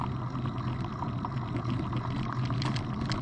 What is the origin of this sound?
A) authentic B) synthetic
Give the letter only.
A